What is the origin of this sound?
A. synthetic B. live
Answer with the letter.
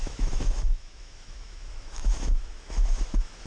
A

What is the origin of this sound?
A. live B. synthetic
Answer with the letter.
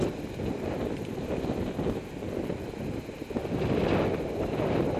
A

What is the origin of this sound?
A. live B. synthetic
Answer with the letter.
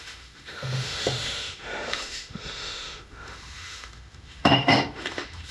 B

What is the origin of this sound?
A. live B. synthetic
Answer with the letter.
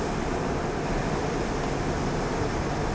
A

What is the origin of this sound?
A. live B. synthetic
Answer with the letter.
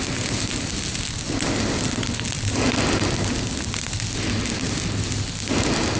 A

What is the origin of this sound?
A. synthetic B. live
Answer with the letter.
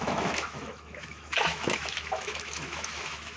A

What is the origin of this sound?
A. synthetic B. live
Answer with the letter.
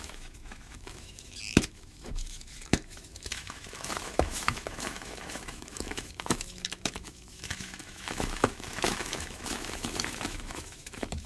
A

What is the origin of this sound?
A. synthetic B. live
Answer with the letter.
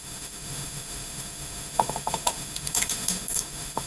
A